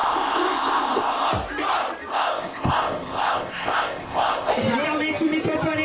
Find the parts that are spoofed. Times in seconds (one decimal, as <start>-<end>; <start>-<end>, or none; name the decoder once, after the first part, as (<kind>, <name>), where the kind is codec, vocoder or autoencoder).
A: 0.0-1.3 (codec, ZipCodec); 2.1-4.5